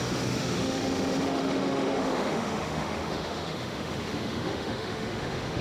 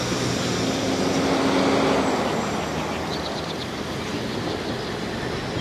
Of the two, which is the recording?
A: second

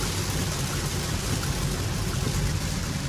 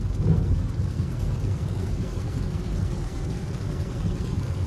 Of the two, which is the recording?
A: first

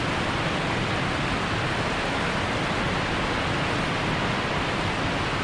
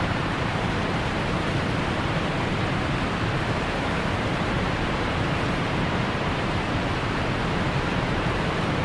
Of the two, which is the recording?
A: first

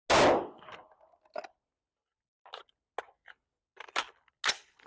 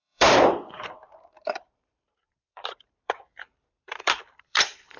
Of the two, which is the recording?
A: first